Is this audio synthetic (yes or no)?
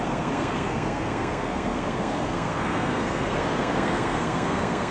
yes